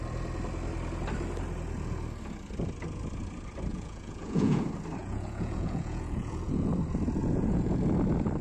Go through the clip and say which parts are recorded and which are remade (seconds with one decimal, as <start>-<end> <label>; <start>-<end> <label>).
0.0-3.7 recorded; 3.7-4.6 remade; 4.6-5.0 recorded; 5.0-6.7 remade; 6.7-7.2 recorded; 7.2-7.9 remade; 7.9-8.4 recorded